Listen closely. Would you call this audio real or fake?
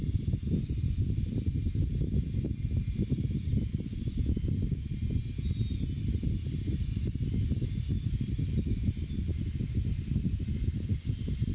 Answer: real